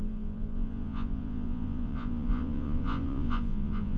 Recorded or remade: remade